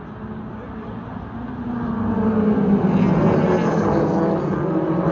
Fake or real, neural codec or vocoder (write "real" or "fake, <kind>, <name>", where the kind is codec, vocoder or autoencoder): real